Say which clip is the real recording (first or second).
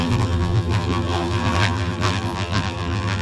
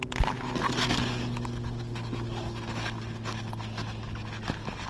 second